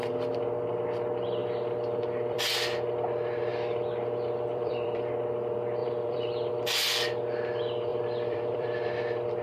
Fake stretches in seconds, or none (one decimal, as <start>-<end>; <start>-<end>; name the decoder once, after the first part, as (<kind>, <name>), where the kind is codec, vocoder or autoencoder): 1.4-2.5 (vocoder, BigVGAN v2); 3.5-5.1; 5.8-6.5; 7.9-8.9